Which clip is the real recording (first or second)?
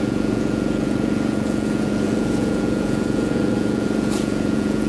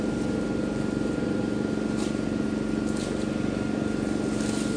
second